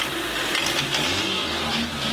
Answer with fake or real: real